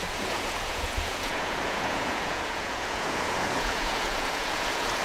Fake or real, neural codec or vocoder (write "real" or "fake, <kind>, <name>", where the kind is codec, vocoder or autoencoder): fake, vocoder, Vocos